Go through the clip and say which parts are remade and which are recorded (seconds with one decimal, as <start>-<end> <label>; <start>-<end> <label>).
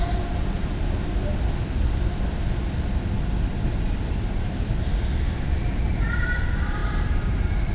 0.0-1.3 remade; 1.3-5.9 recorded; 5.9-7.7 remade